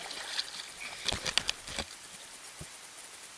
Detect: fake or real real